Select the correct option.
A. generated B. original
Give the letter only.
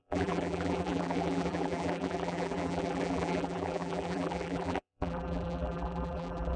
A